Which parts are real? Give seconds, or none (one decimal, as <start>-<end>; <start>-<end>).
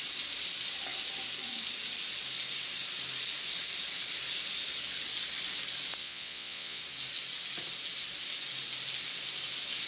0.0-6.0; 6.8-9.9